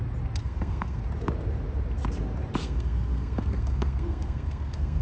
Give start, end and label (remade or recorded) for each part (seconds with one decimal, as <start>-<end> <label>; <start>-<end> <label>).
0.0-0.4 recorded; 0.4-1.0 remade; 1.0-2.6 recorded; 2.6-5.0 remade